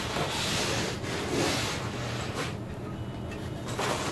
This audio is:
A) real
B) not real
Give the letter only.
A